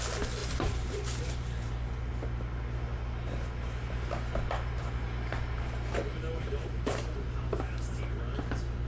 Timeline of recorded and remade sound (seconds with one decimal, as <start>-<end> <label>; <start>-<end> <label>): 0.0-0.4 recorded; 0.4-1.7 remade; 1.7-6.1 recorded; 6.1-8.2 remade; 8.2-8.9 recorded